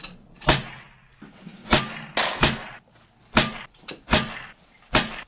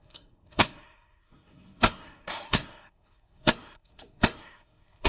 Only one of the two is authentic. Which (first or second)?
first